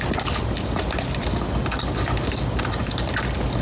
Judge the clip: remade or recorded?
recorded